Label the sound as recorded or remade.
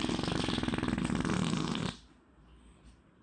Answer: recorded